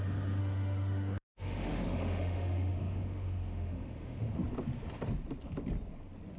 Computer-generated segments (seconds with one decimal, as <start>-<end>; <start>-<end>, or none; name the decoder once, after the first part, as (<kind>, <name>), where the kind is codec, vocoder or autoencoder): 0.4-4.2 (autoencoder, DAC-VAE)